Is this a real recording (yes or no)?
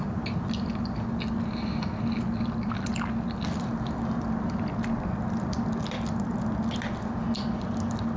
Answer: yes